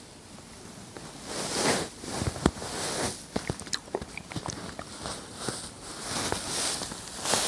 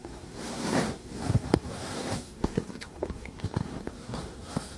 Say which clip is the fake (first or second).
second